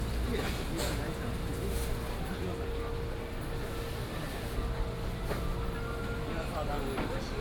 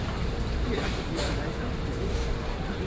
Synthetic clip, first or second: second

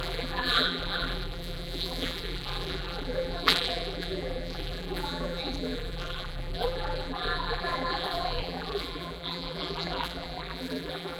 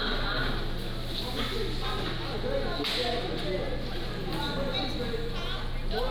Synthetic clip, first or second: first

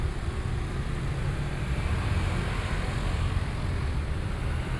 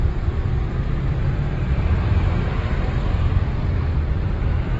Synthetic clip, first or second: second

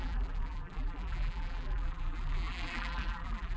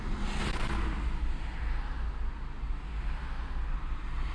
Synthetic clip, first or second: first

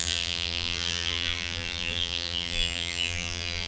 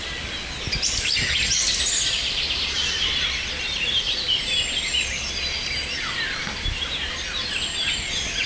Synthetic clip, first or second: first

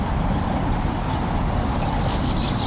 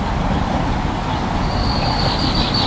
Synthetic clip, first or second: first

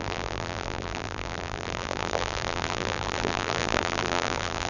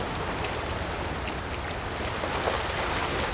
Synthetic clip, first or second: first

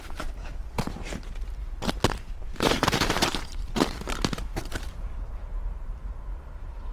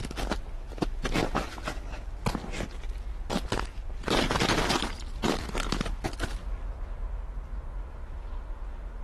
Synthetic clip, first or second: first